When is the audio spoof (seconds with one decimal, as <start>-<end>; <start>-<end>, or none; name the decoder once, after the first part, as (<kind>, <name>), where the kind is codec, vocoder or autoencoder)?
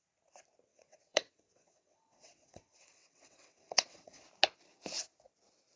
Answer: 0.7-4.2 (vocoder, WaveNeXt)